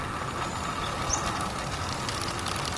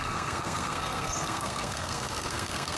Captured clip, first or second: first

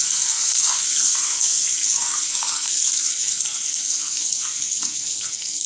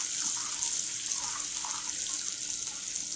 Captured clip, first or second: second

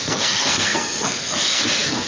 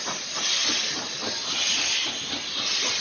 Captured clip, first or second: second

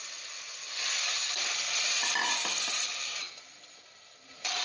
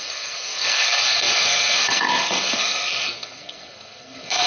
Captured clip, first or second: first